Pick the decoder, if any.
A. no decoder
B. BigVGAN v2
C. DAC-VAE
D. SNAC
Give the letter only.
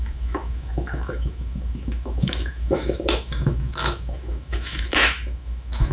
C